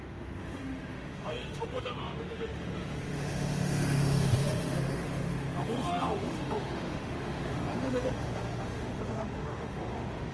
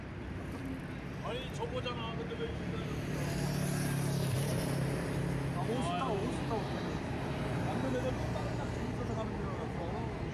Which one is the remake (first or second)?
first